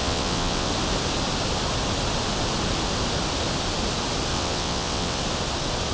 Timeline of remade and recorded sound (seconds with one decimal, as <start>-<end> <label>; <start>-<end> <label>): 0.0-0.7 remade; 0.7-4.3 recorded; 4.3-5.2 remade; 5.2-5.9 recorded